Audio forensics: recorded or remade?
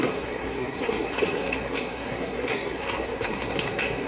remade